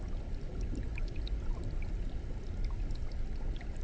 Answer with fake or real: real